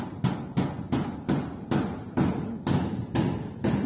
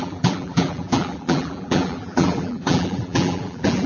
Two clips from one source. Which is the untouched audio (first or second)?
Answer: first